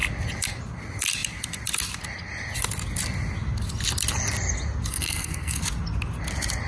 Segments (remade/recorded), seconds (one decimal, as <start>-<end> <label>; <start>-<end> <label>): 0.0-4.9 recorded; 4.9-5.6 remade; 5.6-6.7 recorded